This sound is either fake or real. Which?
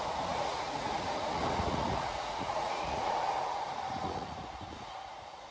fake